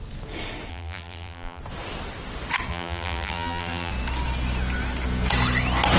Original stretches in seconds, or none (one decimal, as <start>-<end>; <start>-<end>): 0.0-0.7; 1.6-2.7; 3.9-6.0